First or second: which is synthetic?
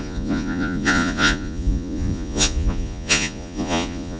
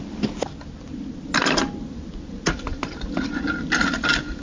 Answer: first